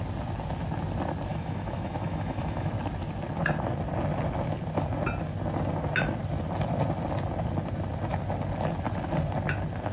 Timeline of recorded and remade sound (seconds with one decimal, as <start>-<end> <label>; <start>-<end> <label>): 0.0-1.3 recorded; 1.3-2.7 remade; 2.7-9.9 recorded